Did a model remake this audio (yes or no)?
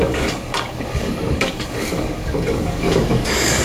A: yes